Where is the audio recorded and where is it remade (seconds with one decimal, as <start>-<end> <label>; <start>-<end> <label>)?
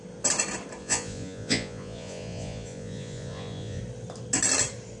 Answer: 0.0-0.8 recorded; 0.8-3.8 remade; 3.8-5.0 recorded